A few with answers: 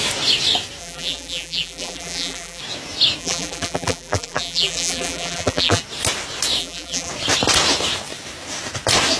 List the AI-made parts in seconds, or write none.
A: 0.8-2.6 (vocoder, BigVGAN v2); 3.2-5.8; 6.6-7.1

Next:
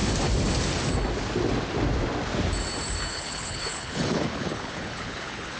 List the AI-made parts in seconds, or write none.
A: 3.1-5.6 (codec, HILCodec)

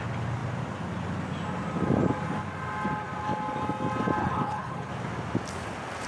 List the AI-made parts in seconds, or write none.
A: 4.2-4.9 (codec, HILCodec)

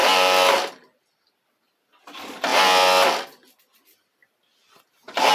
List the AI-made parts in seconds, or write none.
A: 0.0-1.5 (vocoder, BigVGAN v2)